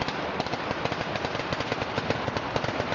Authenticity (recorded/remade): recorded